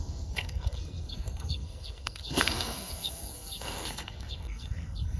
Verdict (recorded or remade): remade